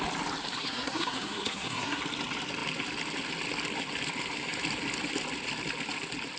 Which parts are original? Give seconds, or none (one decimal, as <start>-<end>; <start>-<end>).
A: 0.0-0.6; 2.0-6.4